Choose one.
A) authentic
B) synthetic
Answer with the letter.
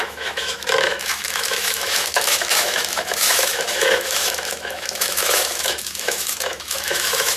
B